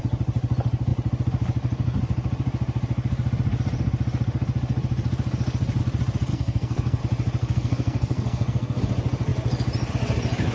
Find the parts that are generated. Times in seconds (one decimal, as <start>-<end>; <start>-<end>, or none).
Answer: 6.3-7.0; 7.4-8.8